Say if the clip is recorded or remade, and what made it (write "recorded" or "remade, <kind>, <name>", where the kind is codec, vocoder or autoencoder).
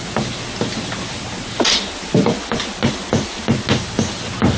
recorded